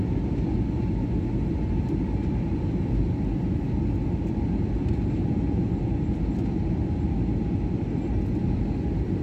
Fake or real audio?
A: real